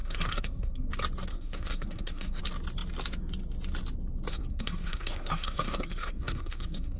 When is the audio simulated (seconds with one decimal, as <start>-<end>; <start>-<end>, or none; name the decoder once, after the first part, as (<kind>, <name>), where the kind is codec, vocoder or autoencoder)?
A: 0.0-0.9 (codec, SNAC); 1.3-2.4; 4.3-7.0